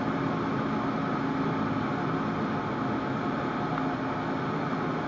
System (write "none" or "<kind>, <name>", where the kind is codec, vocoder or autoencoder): none